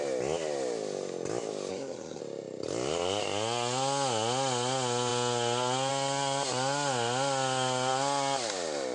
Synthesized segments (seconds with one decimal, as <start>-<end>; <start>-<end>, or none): 1.7-2.2